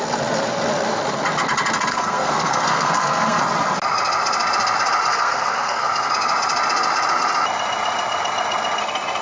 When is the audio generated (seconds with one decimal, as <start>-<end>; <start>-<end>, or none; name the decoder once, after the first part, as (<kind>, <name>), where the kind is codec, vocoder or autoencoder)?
1.9-3.4 (codec, SNAC); 5.1-5.8